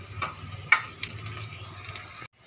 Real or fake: real